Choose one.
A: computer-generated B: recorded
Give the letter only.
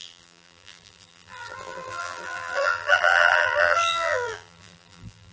A